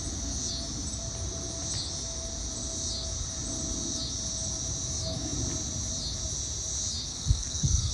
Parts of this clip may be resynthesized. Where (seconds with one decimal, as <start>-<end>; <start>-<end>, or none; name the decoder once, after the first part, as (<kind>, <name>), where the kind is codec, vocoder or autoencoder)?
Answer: 7.1-7.9 (codec, SNAC)